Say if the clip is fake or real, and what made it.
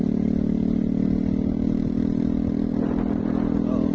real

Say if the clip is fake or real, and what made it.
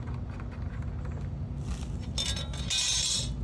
real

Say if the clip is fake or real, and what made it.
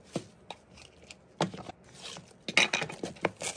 real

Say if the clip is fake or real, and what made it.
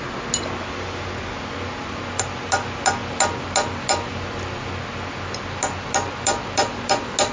real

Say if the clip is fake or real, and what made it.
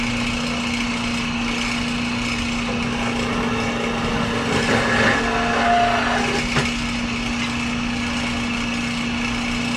real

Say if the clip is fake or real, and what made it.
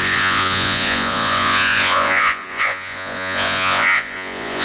fake, vocoder, Vocos